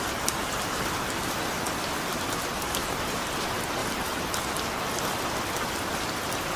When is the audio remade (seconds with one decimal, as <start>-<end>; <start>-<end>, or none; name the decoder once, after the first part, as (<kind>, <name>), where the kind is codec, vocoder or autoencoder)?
0.4-1.5 (vocoder, BigVGAN v2); 2.5-3.3; 3.8-4.3